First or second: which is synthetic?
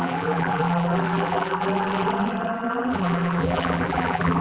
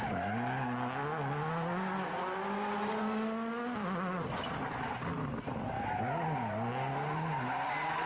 first